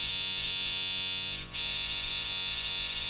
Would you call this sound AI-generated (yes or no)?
yes